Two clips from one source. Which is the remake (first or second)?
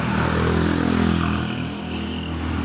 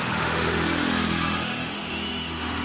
second